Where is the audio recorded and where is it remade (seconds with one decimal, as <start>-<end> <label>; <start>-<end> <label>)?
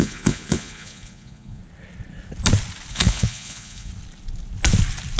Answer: 0.0-1.6 remade; 1.6-2.9 recorded; 2.9-3.9 remade; 3.9-5.2 recorded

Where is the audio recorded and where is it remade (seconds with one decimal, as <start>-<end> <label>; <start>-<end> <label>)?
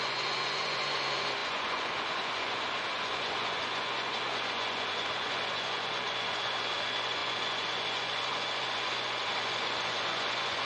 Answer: 0.0-10.7 remade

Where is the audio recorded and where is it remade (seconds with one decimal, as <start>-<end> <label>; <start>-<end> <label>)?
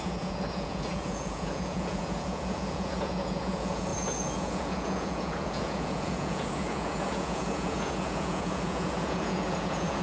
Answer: 0.0-10.0 remade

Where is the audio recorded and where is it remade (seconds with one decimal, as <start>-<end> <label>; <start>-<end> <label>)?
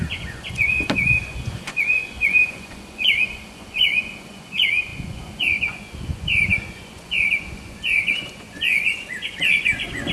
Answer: 0.0-10.1 remade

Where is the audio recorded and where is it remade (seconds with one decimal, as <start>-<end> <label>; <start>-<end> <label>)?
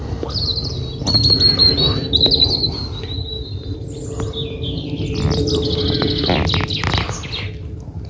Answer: 0.0-8.1 recorded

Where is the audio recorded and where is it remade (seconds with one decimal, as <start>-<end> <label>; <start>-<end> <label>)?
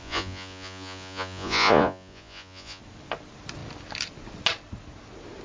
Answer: 0.0-2.8 remade; 2.8-5.4 recorded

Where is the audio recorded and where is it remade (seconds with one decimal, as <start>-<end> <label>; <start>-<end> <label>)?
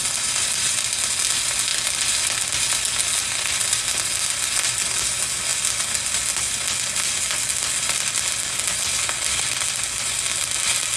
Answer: 0.0-11.0 recorded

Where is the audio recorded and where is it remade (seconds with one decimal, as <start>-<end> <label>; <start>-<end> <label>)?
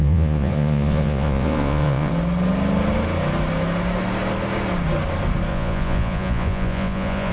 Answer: 0.0-2.1 remade; 2.1-5.5 recorded; 5.5-7.3 remade